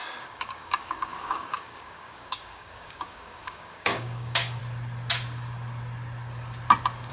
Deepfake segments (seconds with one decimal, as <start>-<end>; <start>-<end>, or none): 0.0-4.6